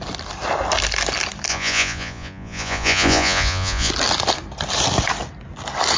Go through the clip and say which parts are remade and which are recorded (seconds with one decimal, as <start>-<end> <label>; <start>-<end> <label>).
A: 0.0-1.5 recorded; 1.5-3.9 remade; 3.9-6.0 recorded